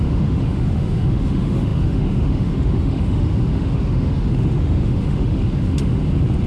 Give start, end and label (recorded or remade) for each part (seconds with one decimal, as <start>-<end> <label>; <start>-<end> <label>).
0.0-6.0 remade; 6.0-6.5 recorded